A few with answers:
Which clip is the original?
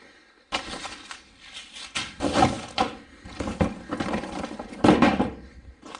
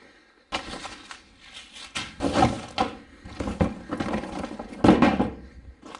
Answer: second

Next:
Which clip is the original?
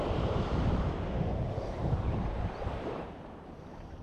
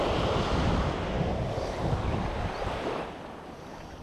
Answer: second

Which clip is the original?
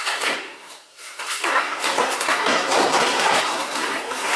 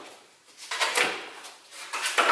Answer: second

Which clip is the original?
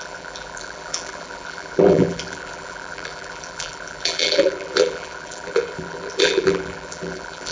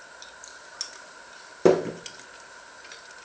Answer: second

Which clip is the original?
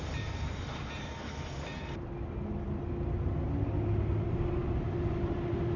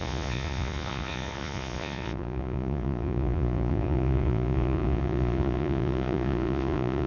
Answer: first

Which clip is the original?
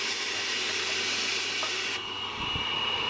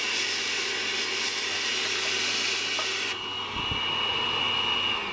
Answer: second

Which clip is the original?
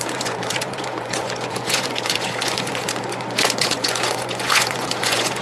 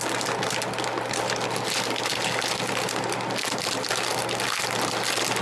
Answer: second